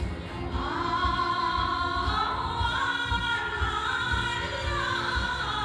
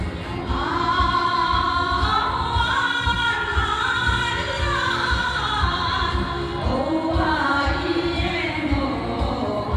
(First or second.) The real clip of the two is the first